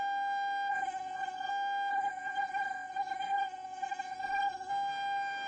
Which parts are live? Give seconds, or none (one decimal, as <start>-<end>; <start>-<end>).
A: 0.0-0.7; 1.5-1.9; 4.7-5.5